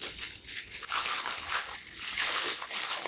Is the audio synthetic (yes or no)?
yes